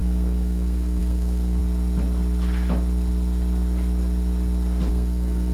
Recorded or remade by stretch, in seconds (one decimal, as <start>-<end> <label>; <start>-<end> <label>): 0.0-1.6 remade; 1.6-4.9 recorded; 4.9-5.5 remade